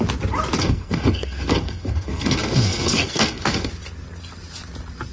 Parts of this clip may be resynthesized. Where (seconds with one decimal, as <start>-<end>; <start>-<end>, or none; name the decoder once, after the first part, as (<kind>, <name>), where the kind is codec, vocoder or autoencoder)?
0.6-3.7 (codec, SNAC)